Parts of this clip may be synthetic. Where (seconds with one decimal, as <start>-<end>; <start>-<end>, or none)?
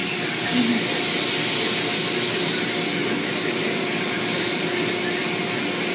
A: none